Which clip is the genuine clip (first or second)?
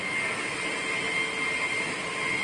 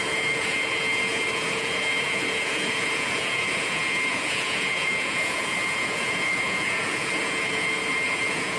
first